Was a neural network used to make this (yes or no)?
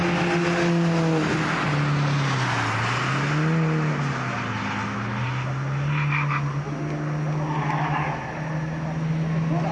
no